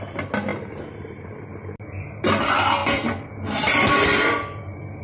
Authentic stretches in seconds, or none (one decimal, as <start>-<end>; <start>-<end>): 0.0-5.0